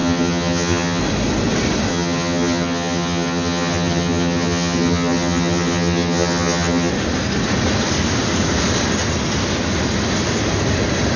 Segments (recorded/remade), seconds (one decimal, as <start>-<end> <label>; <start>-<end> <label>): 0.0-1.0 remade; 1.0-1.9 recorded; 1.9-6.9 remade; 6.9-11.2 recorded